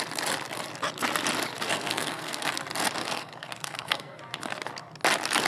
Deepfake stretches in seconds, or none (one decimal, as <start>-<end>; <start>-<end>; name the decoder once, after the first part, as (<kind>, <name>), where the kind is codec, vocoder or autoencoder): 1.7-2.5 (codec, SNAC); 3.0-4.2